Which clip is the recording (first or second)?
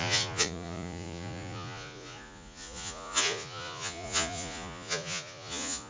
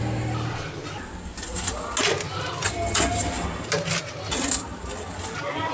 second